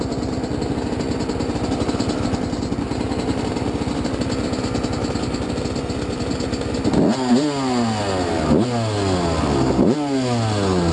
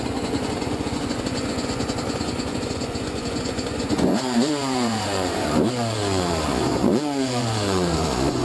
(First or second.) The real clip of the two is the first